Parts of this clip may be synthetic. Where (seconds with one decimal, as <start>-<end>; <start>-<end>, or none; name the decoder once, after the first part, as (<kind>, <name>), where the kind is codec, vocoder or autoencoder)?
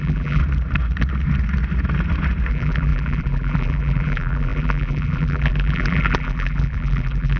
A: 0.0-0.4 (vocoder, BigVGAN v2); 2.5-7.4